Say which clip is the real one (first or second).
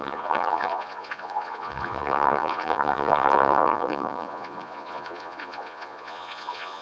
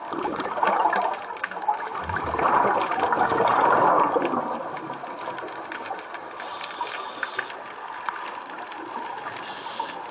second